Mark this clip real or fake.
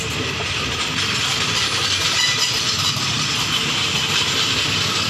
real